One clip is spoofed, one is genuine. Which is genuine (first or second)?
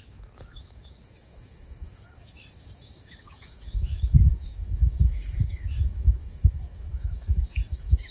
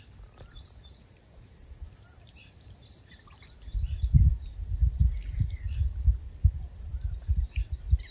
second